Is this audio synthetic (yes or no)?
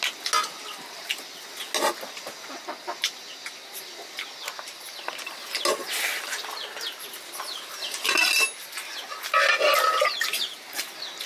no